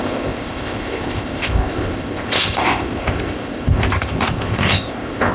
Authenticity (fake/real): fake